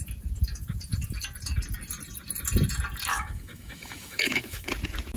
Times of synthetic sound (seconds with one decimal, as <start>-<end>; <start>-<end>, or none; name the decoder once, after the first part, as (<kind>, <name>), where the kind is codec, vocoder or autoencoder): 3.1-4.7 (autoencoder, DAC-VAE)